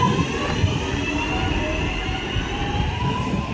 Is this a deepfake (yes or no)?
no